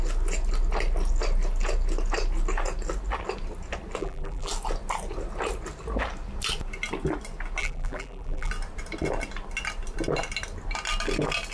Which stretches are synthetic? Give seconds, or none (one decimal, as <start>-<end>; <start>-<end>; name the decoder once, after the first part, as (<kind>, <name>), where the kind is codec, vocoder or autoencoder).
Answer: 4.0-4.5 (vocoder, BigVGAN v2); 7.6-8.5